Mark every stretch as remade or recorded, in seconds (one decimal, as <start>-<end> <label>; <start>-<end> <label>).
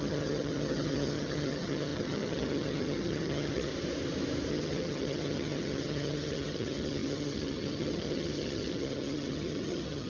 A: 0.0-3.7 remade; 3.7-4.5 recorded; 4.5-10.1 remade